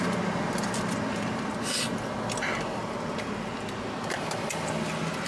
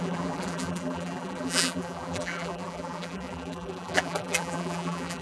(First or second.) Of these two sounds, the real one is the first